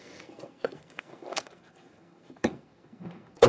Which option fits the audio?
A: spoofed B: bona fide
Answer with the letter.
A